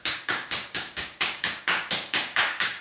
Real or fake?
fake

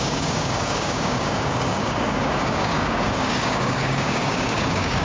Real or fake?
fake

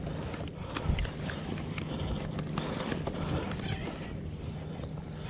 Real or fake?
real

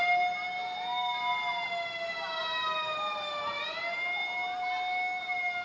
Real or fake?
real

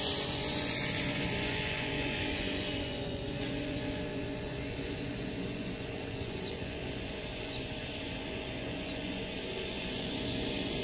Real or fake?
fake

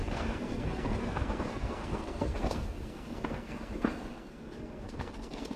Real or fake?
fake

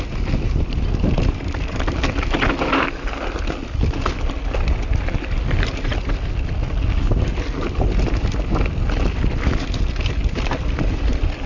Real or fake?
real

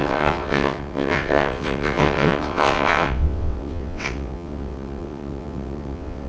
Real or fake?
fake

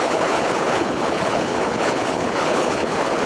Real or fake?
fake